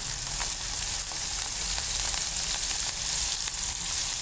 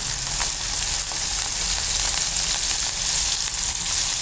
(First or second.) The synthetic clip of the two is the first